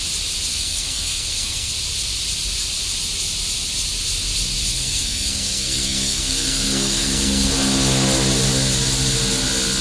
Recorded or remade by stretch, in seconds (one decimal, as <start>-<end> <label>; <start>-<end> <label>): 0.0-0.5 recorded; 0.5-1.7 remade; 1.7-4.7 recorded; 4.7-7.5 remade; 7.5-9.8 recorded